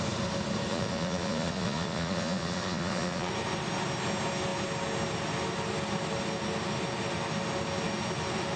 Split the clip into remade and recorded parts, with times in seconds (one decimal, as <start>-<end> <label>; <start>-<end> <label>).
0.0-0.7 recorded; 0.7-3.3 remade; 3.3-8.6 recorded